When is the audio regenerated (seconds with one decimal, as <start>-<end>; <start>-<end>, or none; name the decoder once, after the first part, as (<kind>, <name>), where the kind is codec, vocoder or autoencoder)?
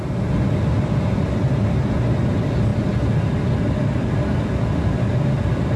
none